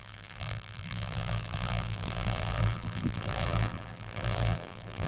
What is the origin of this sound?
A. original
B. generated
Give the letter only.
B